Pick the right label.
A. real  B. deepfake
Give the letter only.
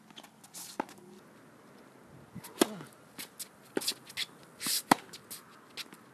A